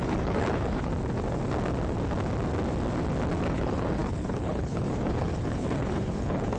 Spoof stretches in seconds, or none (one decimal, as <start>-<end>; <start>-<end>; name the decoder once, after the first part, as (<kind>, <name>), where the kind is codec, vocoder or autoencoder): 0.0-0.9 (codec, HILCodec); 3.5-6.6